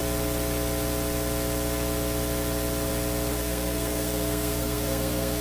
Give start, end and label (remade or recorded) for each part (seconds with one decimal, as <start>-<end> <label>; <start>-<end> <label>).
0.0-3.3 recorded; 3.3-5.4 remade